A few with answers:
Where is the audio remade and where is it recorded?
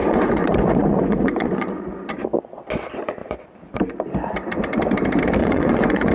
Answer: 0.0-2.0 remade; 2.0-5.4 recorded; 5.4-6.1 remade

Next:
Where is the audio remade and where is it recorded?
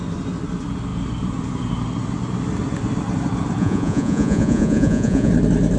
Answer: 0.0-3.6 recorded; 3.6-5.3 remade; 5.3-5.8 recorded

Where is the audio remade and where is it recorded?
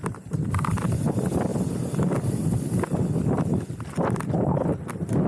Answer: 0.0-5.3 recorded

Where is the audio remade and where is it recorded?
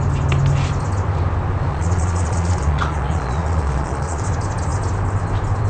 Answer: 0.0-1.7 recorded; 1.7-4.2 remade; 4.2-5.7 recorded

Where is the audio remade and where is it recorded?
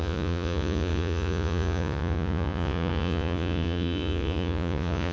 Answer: 0.0-5.1 remade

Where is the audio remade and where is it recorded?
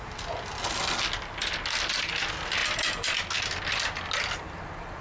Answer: 0.0-5.0 recorded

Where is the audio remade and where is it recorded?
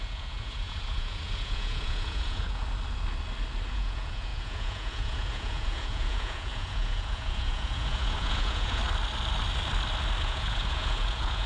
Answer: 0.0-2.6 remade; 2.6-3.7 recorded; 3.7-8.8 remade; 8.8-10.2 recorded; 10.2-11.5 remade